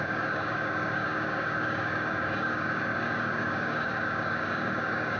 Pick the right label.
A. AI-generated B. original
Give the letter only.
A